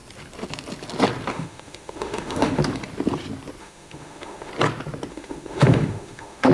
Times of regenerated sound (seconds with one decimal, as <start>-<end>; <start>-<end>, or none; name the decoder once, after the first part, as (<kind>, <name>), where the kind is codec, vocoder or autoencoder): 1.3-2.6 (autoencoder, DAC-VAE); 3.6-4.5; 5.1-6.5